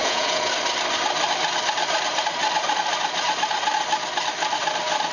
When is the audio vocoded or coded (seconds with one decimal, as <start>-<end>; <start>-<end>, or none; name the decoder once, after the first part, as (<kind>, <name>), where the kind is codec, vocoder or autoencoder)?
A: 0.0-0.5 (vocoder, Vocos)